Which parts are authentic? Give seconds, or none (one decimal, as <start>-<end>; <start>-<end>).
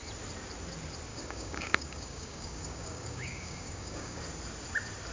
0.0-1.1; 4.2-5.1